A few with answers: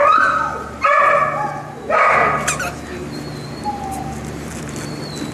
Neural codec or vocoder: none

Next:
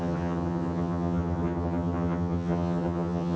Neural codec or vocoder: vocoder, HiFi-GAN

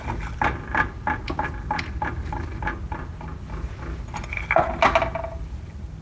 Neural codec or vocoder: none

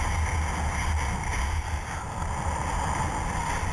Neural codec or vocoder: none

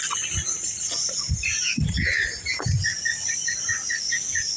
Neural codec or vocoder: none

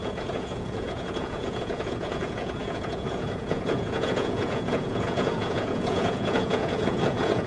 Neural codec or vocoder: vocoder, Vocos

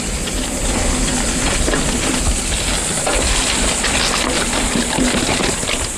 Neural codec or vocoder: none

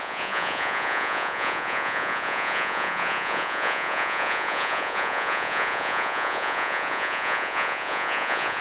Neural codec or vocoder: vocoder, Vocos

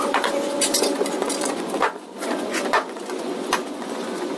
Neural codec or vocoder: vocoder, Vocos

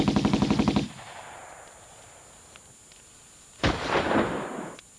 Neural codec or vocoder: none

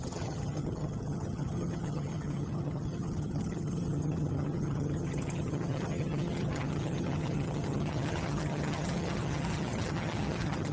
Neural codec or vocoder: vocoder, HiFi-GAN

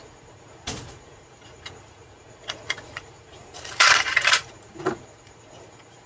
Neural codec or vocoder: vocoder, Vocos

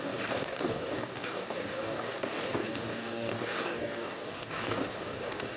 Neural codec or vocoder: codec, DAC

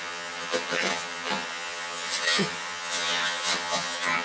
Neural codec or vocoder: vocoder, HiFi-GAN